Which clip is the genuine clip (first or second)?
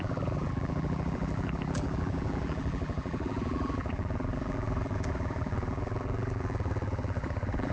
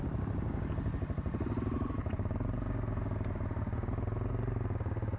second